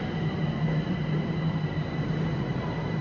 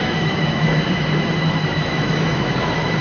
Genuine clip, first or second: first